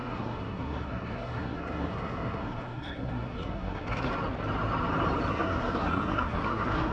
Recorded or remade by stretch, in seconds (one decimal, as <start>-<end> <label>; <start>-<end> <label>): 0.0-4.1 remade; 4.1-5.3 recorded; 5.3-6.9 remade